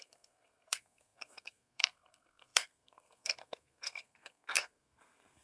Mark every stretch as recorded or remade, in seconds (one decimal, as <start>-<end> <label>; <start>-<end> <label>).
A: 0.0-5.4 remade